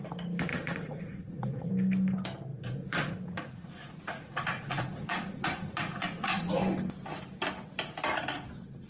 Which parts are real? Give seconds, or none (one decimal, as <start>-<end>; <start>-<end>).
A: 0.0-0.5; 1.7-2.5; 6.6-8.9